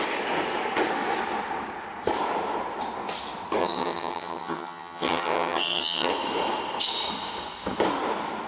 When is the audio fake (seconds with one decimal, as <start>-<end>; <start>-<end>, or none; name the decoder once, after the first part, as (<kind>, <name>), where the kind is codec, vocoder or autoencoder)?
3.6-6.1 (vocoder, HiFi-GAN)

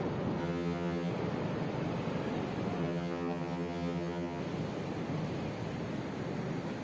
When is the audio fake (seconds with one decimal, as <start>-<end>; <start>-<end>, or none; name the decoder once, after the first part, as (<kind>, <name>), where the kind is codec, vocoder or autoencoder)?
0.4-1.1 (vocoder, HiFi-GAN); 2.8-4.4

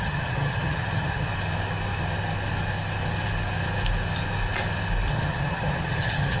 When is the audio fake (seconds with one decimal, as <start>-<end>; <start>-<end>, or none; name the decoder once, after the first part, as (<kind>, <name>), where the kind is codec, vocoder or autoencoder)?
0.0-1.3 (vocoder, HiFi-GAN); 5.1-6.4

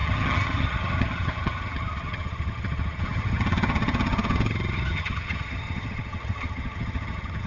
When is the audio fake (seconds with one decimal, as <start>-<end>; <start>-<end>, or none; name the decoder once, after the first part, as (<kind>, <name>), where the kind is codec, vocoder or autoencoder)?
0.0-7.5 (vocoder, HiFi-GAN)

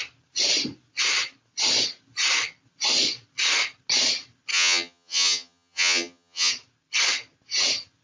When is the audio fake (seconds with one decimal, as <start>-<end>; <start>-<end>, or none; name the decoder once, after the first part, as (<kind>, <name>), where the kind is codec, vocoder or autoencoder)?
4.5-6.5 (vocoder, HiFi-GAN)

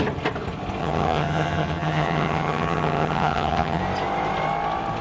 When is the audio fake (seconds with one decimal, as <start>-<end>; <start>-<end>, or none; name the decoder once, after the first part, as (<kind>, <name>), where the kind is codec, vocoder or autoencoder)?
0.8-3.8 (vocoder, HiFi-GAN)

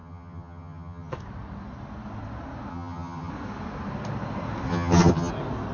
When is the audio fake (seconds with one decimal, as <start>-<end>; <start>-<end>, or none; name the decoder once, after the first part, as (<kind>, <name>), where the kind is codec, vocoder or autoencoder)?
0.0-1.1 (vocoder, HiFi-GAN); 2.7-3.3; 4.7-5.3

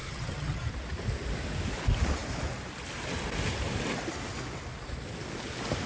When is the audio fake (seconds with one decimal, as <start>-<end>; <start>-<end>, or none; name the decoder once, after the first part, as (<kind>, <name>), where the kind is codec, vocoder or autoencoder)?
0.0-0.7 (vocoder, HiFi-GAN)